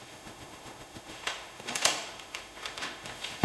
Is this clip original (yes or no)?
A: no